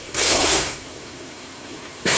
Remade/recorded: remade